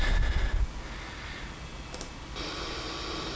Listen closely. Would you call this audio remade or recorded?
recorded